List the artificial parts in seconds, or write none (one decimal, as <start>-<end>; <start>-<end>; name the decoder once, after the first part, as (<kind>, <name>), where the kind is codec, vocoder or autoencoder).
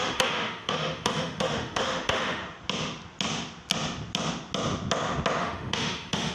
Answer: 0.0-2.4 (autoencoder, DAC-VAE); 5.4-6.3